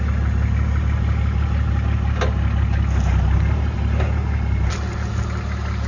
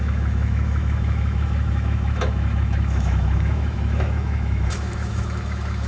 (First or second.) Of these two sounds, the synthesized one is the second